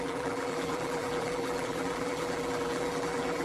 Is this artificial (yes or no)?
yes